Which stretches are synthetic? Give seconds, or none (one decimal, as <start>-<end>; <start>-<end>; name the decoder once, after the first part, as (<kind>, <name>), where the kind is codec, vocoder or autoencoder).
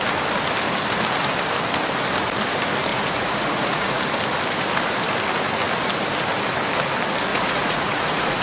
2.9-4.0 (vocoder, Vocos); 7.3-8.4